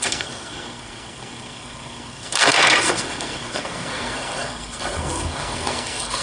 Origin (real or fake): fake